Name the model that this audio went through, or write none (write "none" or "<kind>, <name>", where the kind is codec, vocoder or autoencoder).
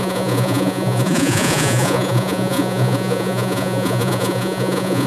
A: vocoder, Vocos